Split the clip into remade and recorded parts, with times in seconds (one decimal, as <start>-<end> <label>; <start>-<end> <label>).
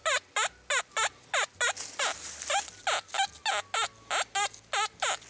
0.0-5.3 recorded